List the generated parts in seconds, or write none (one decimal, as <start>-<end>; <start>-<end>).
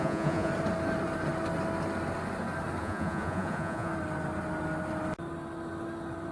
0.0-0.5; 2.8-3.9